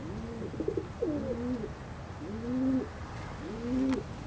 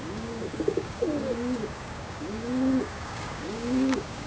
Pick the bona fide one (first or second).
first